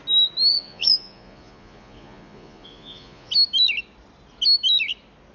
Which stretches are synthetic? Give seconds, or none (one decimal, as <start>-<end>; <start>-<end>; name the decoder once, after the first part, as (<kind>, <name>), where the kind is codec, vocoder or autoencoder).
0.5-3.3 (vocoder, Vocos)